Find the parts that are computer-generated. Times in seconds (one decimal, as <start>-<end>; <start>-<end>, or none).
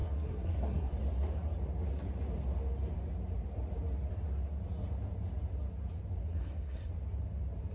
0.0-0.9; 6.3-6.9